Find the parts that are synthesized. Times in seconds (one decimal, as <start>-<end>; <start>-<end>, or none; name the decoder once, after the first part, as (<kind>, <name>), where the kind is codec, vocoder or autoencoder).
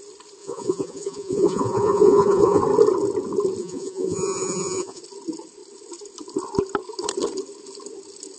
0.4-2.6 (vocoder, Vocos); 3.6-5.0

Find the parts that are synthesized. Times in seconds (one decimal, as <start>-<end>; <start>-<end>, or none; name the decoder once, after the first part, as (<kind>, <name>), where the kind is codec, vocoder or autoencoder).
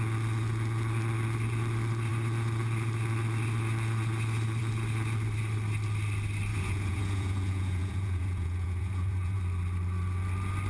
6.5-9.4 (vocoder, Vocos)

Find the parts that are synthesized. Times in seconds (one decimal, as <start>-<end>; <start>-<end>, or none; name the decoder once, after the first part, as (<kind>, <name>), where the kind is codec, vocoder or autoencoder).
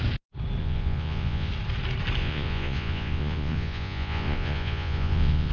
0.6-1.5 (vocoder, Vocos); 2.2-5.5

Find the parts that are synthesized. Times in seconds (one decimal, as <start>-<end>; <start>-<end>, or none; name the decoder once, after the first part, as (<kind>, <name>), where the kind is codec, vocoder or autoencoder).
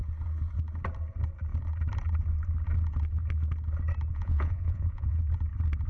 4.1-5.2 (vocoder, Vocos)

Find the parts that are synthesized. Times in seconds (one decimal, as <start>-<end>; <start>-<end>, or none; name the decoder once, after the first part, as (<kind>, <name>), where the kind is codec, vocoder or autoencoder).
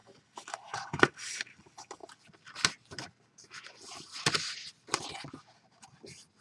none